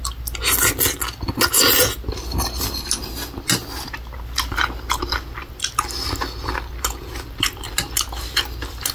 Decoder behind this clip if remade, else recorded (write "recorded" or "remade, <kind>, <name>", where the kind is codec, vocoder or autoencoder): recorded